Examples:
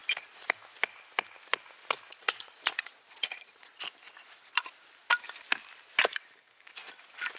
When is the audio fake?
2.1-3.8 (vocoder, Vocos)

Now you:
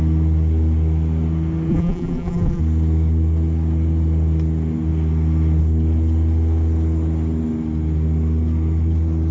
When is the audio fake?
1.7-2.6 (vocoder, BigVGAN v2)

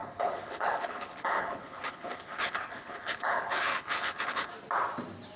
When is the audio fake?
0.0-4.5 (codec, HILCodec)

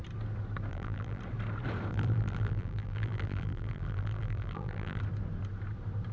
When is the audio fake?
0.7-1.2 (vocoder, BigVGAN v2); 1.9-5.0

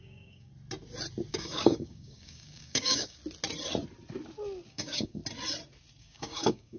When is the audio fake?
0.0-0.5 (codec, DAC); 1.3-3.2; 4.7-5.2; 6.0-6.8

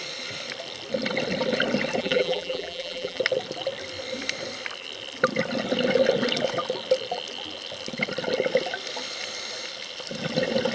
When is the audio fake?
2.0-3.2 (vocoder, BigVGAN v2)